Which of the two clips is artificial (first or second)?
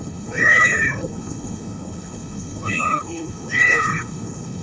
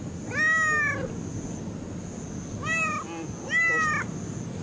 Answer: first